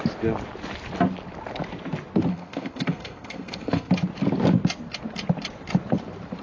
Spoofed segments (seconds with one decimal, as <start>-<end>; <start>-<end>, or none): 2.3-3.9